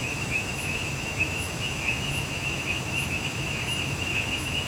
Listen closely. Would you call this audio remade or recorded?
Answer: remade